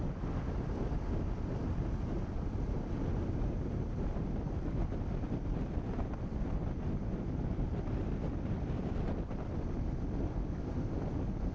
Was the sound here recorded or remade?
recorded